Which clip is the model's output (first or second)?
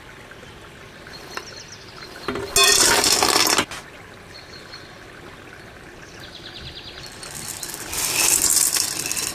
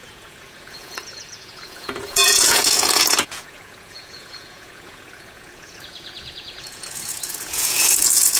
second